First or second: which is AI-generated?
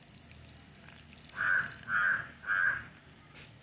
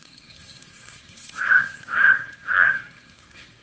second